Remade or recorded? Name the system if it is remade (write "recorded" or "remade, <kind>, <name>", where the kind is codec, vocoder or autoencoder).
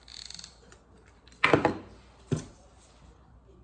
recorded